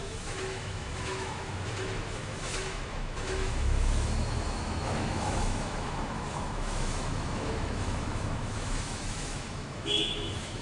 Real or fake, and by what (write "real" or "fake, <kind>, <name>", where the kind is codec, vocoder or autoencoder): fake, autoencoder, DAC-VAE